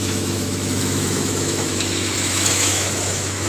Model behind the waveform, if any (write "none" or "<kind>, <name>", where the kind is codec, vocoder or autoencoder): autoencoder, DAC-VAE